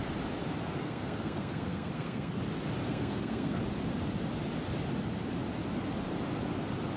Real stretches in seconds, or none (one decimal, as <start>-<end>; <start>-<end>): 0.0-0.8; 2.4-2.8; 3.6-7.0